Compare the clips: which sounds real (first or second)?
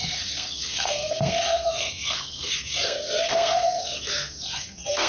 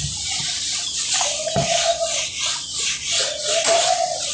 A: second